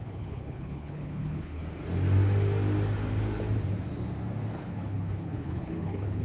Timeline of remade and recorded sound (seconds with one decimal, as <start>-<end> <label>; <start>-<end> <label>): 0.0-1.6 remade; 1.6-4.6 recorded; 4.6-6.2 remade